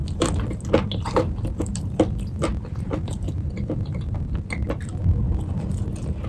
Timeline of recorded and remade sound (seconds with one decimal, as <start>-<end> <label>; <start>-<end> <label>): 0.0-6.3 recorded